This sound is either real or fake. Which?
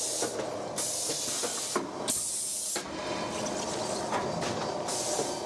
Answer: real